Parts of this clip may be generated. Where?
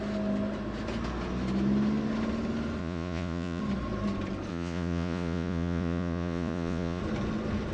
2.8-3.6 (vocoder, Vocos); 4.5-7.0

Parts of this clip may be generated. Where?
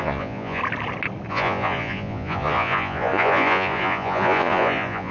0.0-0.6 (vocoder, Vocos); 1.3-5.1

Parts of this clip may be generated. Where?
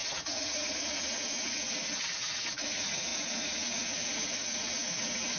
0.0-0.9 (vocoder, Vocos)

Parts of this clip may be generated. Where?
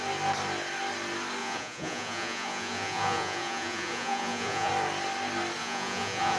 1.4-4.7 (vocoder, Vocos); 5.6-6.4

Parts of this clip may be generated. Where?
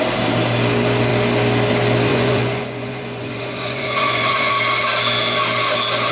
2.1-4.5 (vocoder, Vocos)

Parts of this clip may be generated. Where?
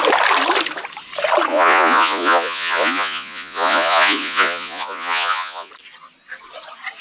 1.5-5.7 (vocoder, Vocos)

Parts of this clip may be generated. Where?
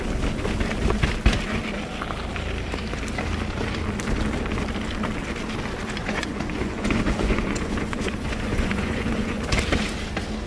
6.0-9.4 (vocoder, Vocos)